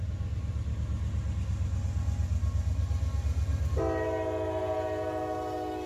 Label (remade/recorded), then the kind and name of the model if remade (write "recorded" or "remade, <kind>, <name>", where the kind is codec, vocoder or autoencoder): recorded